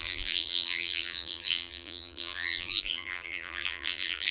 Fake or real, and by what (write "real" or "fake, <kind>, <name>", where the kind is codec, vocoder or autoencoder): fake, vocoder, BigVGAN v2